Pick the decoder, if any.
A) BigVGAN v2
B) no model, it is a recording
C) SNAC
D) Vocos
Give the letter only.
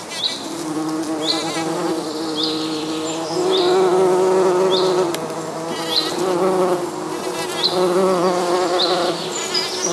B